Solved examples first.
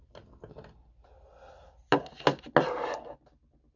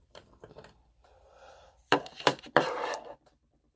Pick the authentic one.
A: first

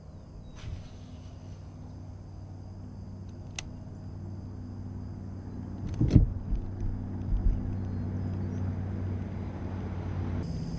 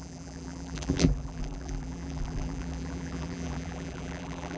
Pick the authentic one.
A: first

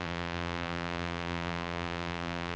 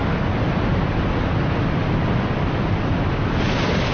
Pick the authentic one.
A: second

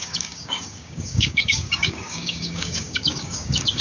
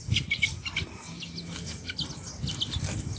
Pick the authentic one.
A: second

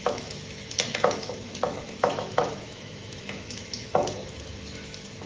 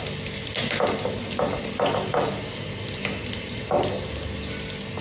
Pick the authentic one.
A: second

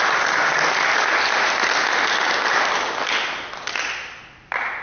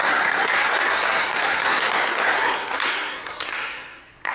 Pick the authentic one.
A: first